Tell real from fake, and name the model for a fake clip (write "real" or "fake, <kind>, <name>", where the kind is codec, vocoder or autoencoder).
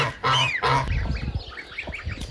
real